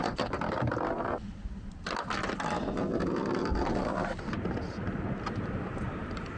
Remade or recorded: recorded